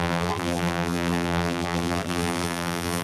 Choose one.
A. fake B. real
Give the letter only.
A